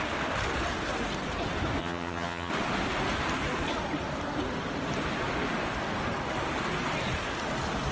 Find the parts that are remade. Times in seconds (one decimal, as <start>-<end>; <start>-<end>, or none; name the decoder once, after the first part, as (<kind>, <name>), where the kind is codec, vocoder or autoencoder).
1.8-2.5 (vocoder, HiFi-GAN)